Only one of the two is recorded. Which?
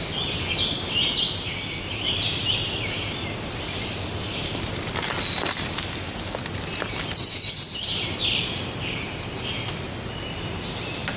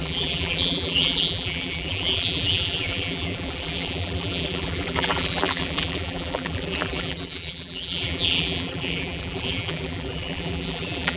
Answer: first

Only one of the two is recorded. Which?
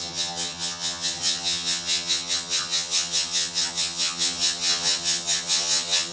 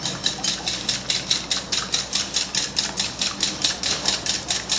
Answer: second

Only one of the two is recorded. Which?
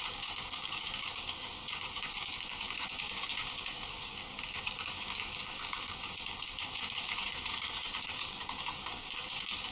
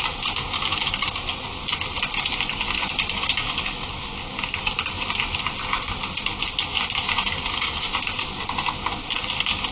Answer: second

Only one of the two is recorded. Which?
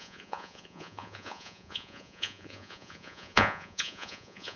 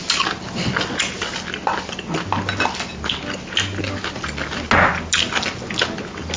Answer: second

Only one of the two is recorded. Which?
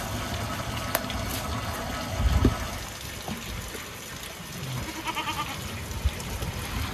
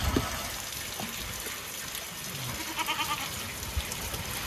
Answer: first